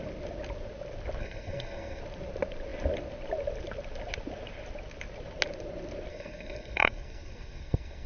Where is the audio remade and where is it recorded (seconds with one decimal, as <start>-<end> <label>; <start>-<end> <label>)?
0.0-1.2 recorded; 1.2-2.0 remade; 2.0-6.1 recorded; 6.1-8.1 remade